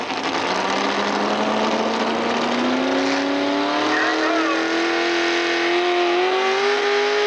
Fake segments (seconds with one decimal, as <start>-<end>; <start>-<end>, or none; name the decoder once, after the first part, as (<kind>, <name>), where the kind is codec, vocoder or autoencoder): none